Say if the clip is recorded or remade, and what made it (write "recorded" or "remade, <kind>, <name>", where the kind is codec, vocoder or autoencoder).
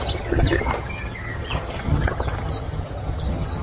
remade, vocoder, HiFi-GAN